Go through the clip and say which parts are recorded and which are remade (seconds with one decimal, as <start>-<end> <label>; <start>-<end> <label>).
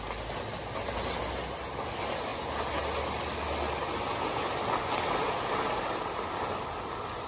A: 0.0-7.3 recorded